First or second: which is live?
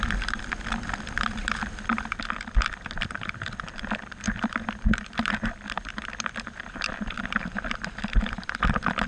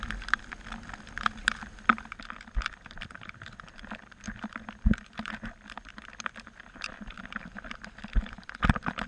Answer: second